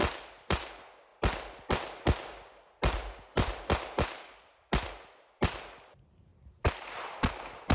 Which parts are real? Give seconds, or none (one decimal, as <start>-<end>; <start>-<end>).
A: 0.7-6.3; 7.2-7.7